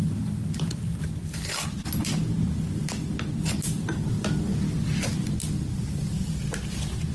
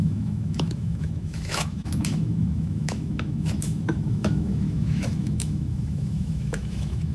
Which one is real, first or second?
first